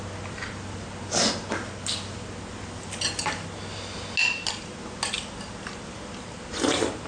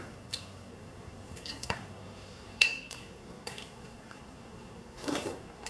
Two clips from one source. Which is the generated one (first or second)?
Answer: second